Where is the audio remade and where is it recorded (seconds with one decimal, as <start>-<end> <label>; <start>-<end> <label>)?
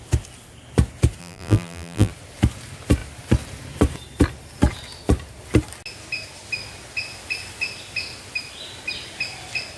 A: 0.0-1.2 recorded; 1.2-2.1 remade; 2.1-9.8 recorded